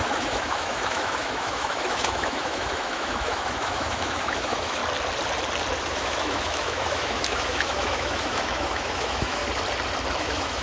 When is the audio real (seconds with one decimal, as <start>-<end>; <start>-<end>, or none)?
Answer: 4.8-5.9; 9.4-10.2